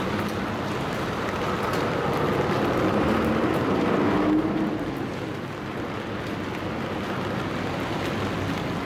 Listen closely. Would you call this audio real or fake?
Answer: real